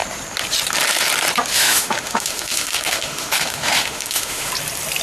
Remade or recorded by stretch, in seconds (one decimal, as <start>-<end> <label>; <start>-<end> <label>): 0.0-1.5 recorded; 1.5-4.5 remade; 4.5-5.0 recorded